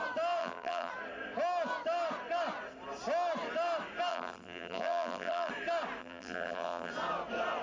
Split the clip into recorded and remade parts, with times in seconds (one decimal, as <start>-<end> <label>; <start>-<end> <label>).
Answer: 0.0-0.4 recorded; 0.4-0.9 remade; 0.9-4.1 recorded; 4.1-5.5 remade; 5.5-6.0 recorded; 6.0-6.9 remade; 6.9-7.6 recorded